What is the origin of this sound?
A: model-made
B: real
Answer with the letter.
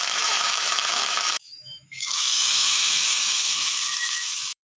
A